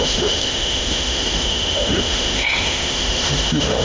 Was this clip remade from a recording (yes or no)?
yes